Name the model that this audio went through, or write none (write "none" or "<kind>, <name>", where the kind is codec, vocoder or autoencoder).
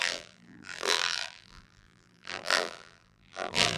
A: vocoder, BigVGAN v2